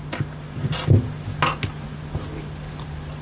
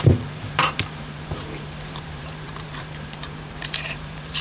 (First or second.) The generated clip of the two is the second